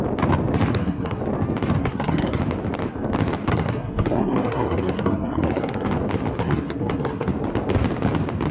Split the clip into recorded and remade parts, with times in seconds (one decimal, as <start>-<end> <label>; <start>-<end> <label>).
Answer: 0.0-0.7 recorded; 0.7-1.2 remade; 1.2-1.8 recorded; 1.8-2.4 remade; 2.4-3.5 recorded; 3.5-5.9 remade; 5.9-6.4 recorded; 6.4-7.3 remade; 7.3-8.5 recorded